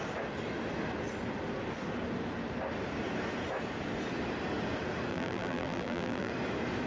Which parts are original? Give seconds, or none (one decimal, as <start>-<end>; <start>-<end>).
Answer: 0.0-5.1; 6.3-6.9